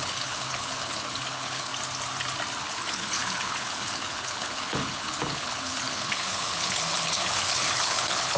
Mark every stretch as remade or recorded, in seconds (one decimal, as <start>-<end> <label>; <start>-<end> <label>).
0.0-1.7 remade; 1.7-2.6 recorded; 2.6-8.4 remade